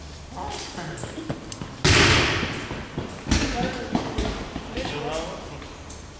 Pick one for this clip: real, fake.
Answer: real